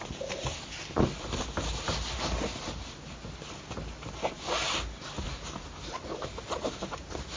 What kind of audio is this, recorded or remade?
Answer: recorded